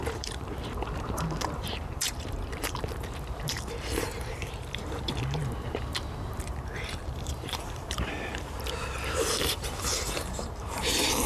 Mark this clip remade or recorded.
remade